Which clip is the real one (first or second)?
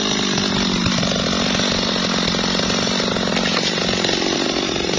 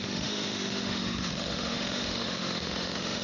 first